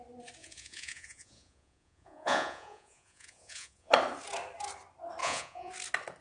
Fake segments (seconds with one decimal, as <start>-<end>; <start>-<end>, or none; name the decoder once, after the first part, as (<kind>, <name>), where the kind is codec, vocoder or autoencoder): 0.4-3.9 (vocoder, Vocos); 5.2-5.7